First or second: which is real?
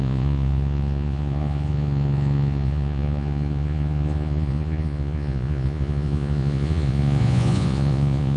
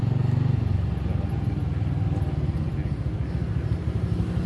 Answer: second